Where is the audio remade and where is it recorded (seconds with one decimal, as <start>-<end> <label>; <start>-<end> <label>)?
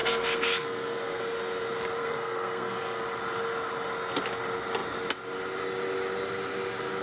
0.0-1.2 remade; 1.2-2.0 recorded; 2.0-3.0 remade; 3.0-7.0 recorded